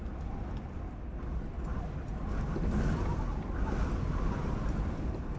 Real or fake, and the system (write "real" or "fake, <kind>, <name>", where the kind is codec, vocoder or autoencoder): real